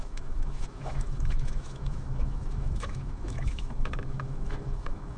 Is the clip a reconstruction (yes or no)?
yes